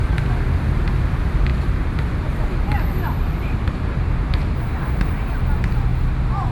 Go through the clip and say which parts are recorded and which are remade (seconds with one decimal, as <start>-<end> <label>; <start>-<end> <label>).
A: 0.0-1.5 recorded; 1.5-5.4 remade; 5.4-6.5 recorded